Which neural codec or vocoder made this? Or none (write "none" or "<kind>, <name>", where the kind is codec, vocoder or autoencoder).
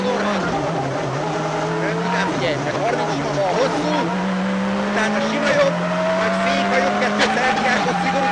none